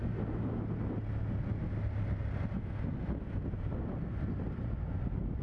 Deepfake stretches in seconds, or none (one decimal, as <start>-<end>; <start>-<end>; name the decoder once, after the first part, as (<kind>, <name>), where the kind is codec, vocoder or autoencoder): none